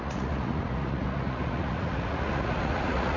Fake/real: fake